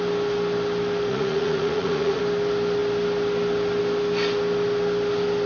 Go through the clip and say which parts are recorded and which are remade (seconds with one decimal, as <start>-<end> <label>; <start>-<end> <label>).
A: 0.0-1.1 recorded; 1.1-2.2 remade; 2.2-5.5 recorded